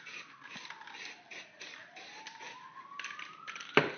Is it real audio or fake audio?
real